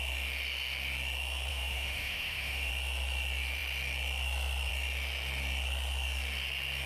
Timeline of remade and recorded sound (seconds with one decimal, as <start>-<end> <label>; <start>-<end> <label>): 0.0-1.5 recorded; 1.5-2.7 remade; 2.7-6.9 recorded